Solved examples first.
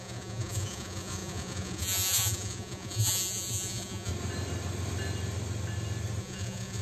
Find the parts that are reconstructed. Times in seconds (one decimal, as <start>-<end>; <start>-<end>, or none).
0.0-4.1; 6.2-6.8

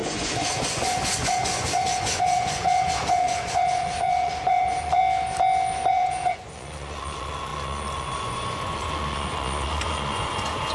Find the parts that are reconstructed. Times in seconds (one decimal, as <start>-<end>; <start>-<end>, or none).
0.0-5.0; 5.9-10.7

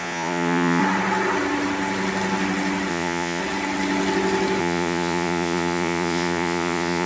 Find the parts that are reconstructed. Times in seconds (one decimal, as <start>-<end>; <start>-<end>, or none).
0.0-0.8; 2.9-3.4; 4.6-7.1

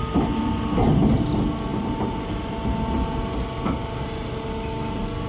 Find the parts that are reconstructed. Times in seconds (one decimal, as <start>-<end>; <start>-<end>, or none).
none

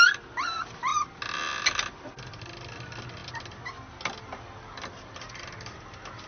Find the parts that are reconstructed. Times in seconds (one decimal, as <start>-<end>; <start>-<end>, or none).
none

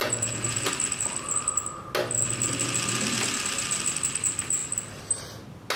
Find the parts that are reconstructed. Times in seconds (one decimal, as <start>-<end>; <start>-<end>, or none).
0.0-0.7

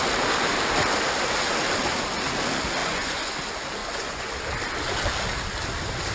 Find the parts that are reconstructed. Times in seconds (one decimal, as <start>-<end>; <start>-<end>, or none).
2.8-3.4; 3.8-4.3

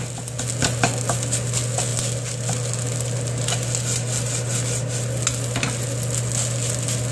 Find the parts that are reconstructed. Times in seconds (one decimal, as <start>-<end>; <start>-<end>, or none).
none